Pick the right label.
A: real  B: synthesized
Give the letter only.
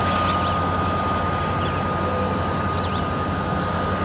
A